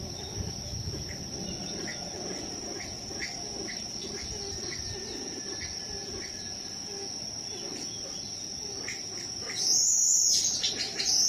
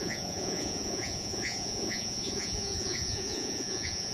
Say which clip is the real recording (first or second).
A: first